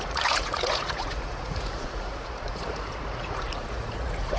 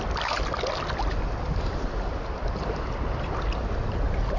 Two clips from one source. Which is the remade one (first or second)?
first